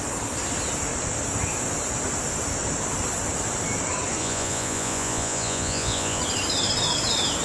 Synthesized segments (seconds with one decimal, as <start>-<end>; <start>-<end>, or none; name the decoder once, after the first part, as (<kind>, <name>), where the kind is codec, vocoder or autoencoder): 4.2-6.2 (vocoder, Vocos)